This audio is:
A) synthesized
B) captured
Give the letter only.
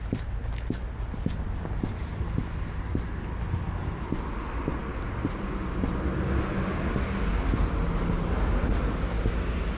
B